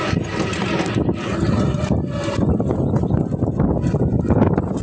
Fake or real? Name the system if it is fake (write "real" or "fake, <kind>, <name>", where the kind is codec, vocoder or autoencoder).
real